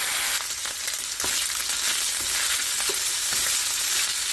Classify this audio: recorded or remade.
recorded